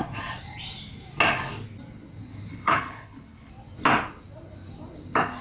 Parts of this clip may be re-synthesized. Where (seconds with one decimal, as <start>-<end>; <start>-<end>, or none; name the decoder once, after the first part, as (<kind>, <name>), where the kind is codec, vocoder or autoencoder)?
2.5-3.5 (codec, HILCodec)